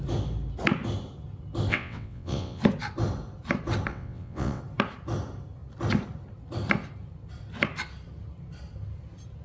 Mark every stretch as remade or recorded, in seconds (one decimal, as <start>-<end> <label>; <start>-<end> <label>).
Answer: 0.0-1.7 recorded; 1.7-2.6 remade; 2.6-3.9 recorded; 3.9-4.6 remade; 4.6-9.4 recorded

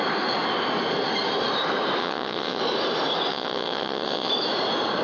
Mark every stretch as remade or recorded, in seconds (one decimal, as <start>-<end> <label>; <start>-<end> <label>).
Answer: 0.0-2.0 recorded; 2.0-2.6 remade; 2.6-3.3 recorded; 3.3-4.3 remade; 4.3-5.0 recorded

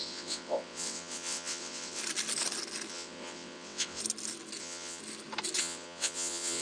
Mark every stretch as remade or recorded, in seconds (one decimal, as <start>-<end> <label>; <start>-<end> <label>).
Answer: 0.0-2.0 remade; 2.0-2.9 recorded; 2.9-4.0 remade; 4.0-4.6 recorded; 4.6-5.0 remade; 5.0-5.6 recorded; 5.6-6.6 remade

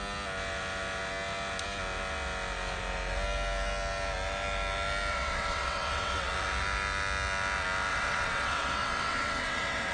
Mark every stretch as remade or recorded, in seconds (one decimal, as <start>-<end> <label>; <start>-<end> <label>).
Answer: 0.0-5.1 recorded; 5.1-6.3 remade; 6.3-7.9 recorded; 7.9-9.9 remade